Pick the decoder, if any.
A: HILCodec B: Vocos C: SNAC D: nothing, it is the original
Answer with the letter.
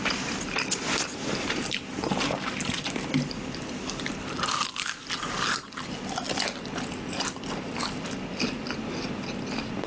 D